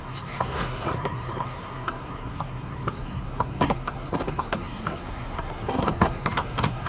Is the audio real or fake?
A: fake